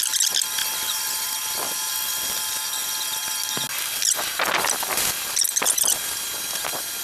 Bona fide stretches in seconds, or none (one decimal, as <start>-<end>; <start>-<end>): 0.0-0.6; 1.7-7.0